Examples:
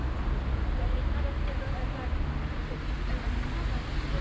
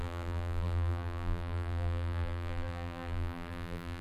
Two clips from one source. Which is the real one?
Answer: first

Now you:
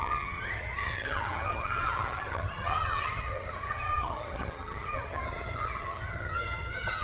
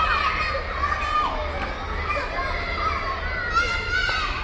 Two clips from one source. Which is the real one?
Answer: second